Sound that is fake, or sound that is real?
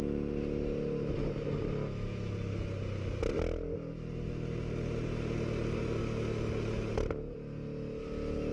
real